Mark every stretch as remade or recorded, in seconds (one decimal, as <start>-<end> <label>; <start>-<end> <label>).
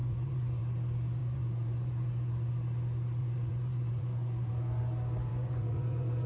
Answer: 0.0-0.6 remade; 0.6-1.2 recorded; 1.2-2.5 remade; 2.5-3.2 recorded; 3.2-4.8 remade; 4.8-5.3 recorded; 5.3-6.3 remade